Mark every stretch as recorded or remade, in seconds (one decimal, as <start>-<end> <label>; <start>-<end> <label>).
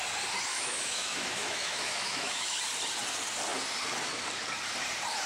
0.0-0.5 recorded; 0.5-2.6 remade; 2.6-5.3 recorded